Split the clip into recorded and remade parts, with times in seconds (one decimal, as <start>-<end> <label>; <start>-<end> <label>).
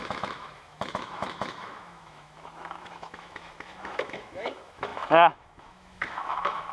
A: 0.0-6.7 remade